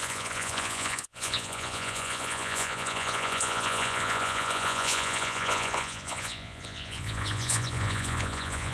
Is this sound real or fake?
fake